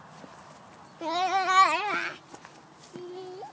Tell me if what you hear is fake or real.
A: real